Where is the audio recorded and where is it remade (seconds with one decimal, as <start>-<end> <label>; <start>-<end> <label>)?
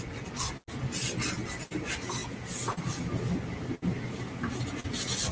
0.0-5.3 recorded